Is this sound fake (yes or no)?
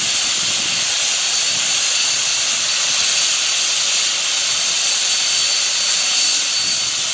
no